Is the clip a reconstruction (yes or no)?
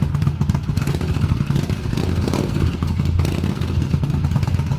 yes